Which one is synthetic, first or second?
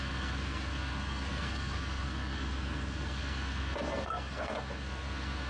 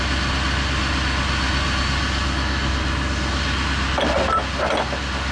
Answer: first